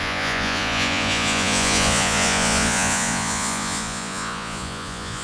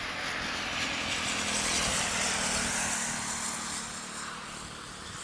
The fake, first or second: first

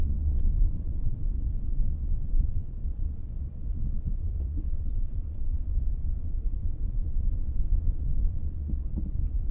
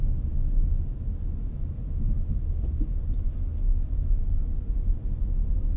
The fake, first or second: first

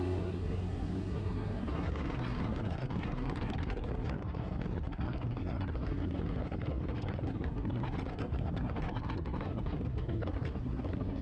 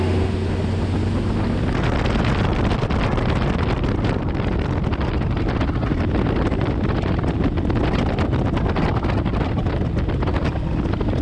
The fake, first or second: first